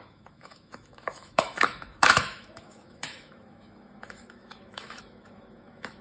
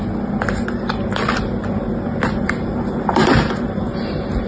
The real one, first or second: second